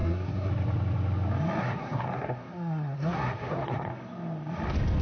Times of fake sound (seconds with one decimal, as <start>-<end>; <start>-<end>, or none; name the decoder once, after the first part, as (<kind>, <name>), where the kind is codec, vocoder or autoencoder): 0.0-0.5 (codec, SNAC); 1.6-3.9